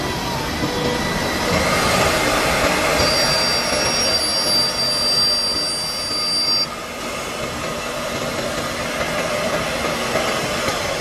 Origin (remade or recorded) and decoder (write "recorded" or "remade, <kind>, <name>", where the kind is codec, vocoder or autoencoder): recorded